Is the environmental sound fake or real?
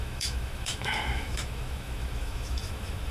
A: fake